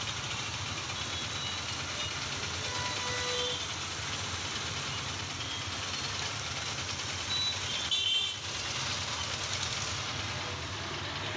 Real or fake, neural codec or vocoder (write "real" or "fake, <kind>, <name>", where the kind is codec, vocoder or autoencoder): real